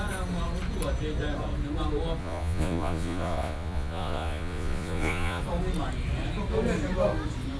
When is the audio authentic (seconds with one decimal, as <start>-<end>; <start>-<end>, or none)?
0.0-2.2; 5.4-7.6